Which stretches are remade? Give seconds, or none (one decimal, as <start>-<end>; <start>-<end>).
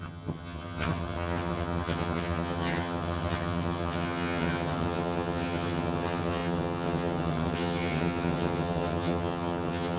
0.0-10.0